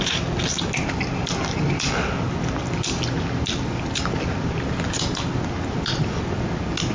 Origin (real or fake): real